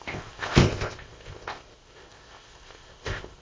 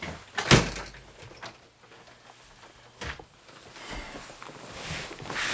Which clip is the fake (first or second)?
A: first